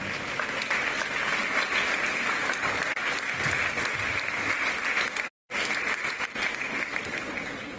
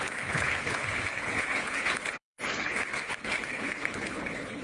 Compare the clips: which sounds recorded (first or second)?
first